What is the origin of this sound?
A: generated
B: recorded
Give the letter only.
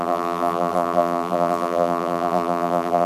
A